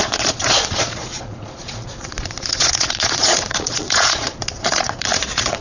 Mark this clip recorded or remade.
remade